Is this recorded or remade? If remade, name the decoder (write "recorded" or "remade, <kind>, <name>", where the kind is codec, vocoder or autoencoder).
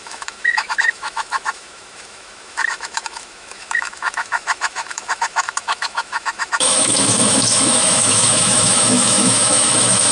remade, autoencoder, DAC-VAE